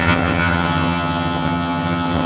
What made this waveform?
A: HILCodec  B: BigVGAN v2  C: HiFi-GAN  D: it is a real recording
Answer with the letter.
C